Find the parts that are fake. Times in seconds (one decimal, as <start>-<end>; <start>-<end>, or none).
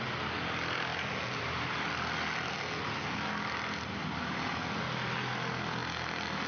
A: none